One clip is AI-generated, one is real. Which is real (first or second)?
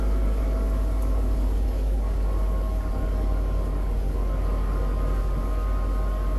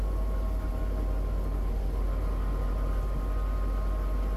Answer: second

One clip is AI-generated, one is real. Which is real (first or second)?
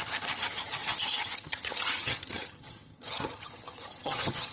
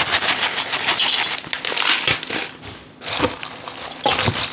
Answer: second